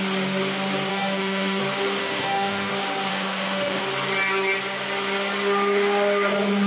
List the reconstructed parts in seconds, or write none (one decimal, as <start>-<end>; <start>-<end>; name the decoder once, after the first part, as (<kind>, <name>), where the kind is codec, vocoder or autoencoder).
0.9-1.6 (autoencoder, DAC-VAE); 2.0-2.7; 3.1-3.8